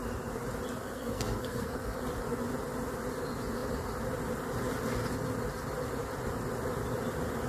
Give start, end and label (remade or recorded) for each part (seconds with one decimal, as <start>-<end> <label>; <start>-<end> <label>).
0.0-0.8 recorded; 0.8-2.0 remade; 2.0-7.5 recorded